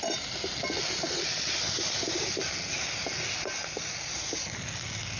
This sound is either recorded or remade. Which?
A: recorded